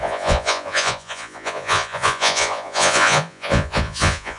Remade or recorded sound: remade